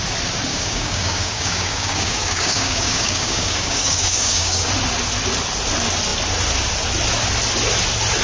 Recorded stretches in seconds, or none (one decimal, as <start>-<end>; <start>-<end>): 0.0-0.5; 4.7-8.2